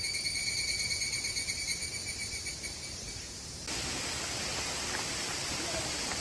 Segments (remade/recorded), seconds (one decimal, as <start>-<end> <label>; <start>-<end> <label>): 0.0-2.0 remade; 2.0-5.7 recorded; 5.7-6.2 remade